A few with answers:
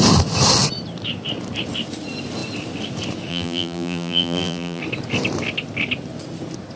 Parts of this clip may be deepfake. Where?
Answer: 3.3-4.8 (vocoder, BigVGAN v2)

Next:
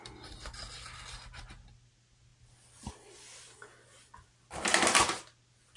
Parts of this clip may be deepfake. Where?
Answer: none

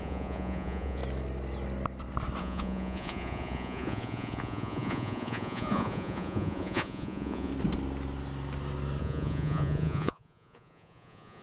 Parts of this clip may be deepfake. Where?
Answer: 0.0-1.0 (vocoder, Vocos); 2.4-7.5; 9.0-11.4

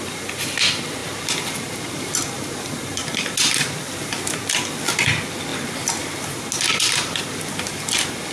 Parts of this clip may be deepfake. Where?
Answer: none

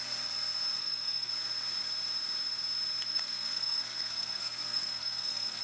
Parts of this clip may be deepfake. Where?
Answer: 0.8-1.3 (codec, SNAC); 3.1-5.6

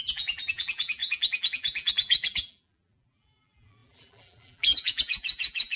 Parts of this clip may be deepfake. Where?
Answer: 0.0-5.8 (vocoder, BigVGAN v2)